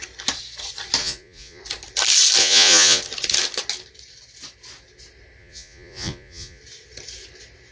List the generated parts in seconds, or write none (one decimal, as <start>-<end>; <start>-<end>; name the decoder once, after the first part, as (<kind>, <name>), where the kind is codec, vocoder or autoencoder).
1.0-1.6 (vocoder, Vocos); 2.4-3.0; 5.4-6.6